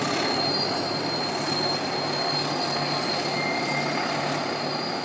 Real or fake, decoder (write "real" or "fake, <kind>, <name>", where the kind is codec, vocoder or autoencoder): real